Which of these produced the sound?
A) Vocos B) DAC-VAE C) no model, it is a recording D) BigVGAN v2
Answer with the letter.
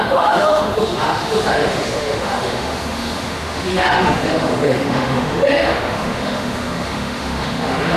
B